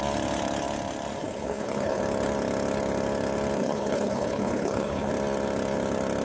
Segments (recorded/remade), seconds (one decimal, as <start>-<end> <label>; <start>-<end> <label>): 0.0-1.2 recorded; 1.2-2.0 remade; 2.0-3.6 recorded; 3.6-5.1 remade; 5.1-6.2 recorded